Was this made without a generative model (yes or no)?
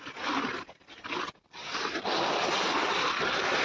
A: yes